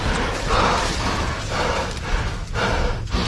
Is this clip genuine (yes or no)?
yes